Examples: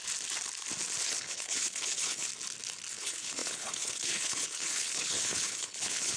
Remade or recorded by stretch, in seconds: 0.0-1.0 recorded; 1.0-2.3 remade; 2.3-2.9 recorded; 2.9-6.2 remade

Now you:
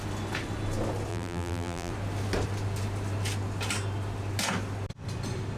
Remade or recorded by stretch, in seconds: 0.0-1.1 recorded; 1.1-1.9 remade; 1.9-5.6 recorded

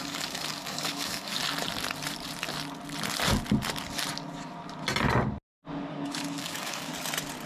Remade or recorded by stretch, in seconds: 0.0-1.4 remade; 1.4-5.9 recorded; 5.9-6.9 remade; 6.9-7.5 recorded

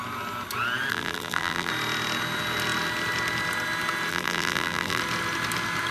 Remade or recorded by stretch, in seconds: 0.0-0.9 recorded; 0.9-1.7 remade; 1.7-4.1 recorded; 4.1-5.0 remade; 5.0-5.9 recorded

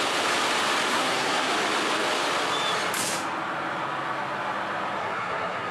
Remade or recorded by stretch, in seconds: 0.0-0.9 recorded; 0.9-1.5 remade; 1.5-5.0 recorded; 5.0-5.7 remade

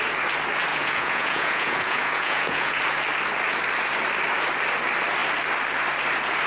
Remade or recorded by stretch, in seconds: 0.0-0.7 recorded; 0.7-2.8 remade; 2.8-6.5 recorded